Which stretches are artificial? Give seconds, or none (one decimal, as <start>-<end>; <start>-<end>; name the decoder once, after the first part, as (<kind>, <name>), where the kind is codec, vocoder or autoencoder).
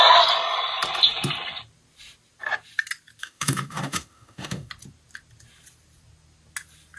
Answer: 3.2-4.7 (autoencoder, DAC-VAE)